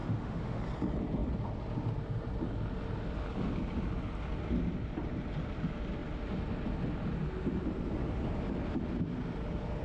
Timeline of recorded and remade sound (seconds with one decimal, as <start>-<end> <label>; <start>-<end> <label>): 0.0-0.6 remade; 0.6-9.8 recorded